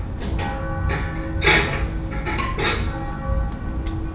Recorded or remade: recorded